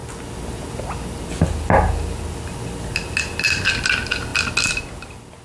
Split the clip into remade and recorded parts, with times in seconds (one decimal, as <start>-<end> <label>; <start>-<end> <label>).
0.0-5.4 recorded